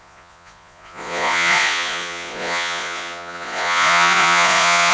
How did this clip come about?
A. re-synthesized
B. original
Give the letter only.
A